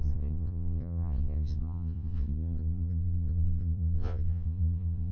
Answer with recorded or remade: remade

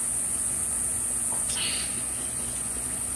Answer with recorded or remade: remade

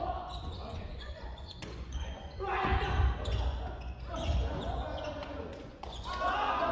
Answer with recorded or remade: remade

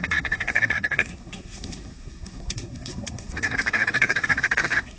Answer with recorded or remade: remade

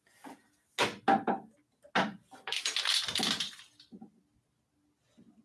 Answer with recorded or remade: recorded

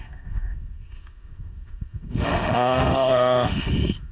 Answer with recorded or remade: remade